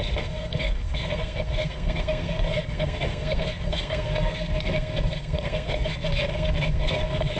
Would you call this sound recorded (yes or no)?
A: no